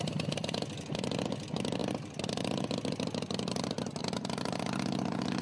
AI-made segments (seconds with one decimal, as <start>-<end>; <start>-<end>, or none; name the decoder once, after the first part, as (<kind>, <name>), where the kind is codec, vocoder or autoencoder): none

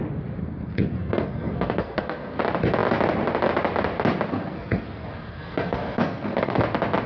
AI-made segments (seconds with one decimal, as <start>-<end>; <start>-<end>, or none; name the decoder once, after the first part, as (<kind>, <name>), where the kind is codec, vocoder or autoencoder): 0.4-2.4 (codec, SNAC); 4.3-6.6